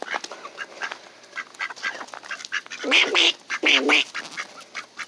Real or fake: real